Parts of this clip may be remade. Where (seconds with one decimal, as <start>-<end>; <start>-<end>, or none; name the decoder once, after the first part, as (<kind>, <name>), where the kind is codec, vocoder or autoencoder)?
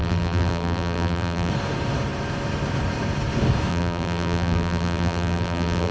0.0-1.5 (vocoder, BigVGAN v2); 3.7-5.9